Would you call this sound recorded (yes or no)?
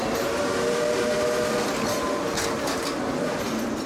yes